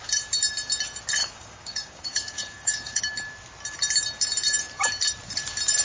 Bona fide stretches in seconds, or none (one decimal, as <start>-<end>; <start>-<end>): 0.0-1.2; 3.0-5.8